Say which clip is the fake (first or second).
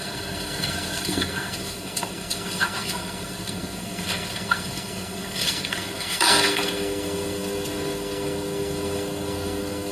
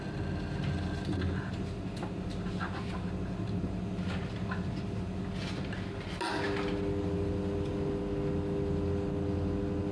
first